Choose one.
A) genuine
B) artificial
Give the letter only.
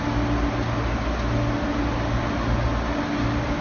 A